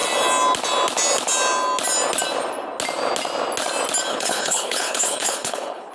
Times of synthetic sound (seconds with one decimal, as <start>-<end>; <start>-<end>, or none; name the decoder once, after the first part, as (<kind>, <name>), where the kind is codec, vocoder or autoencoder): 4.1-5.9 (codec, HILCodec)